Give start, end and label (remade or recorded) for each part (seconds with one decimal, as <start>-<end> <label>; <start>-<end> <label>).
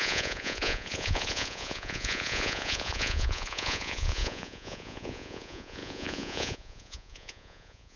0.0-8.0 remade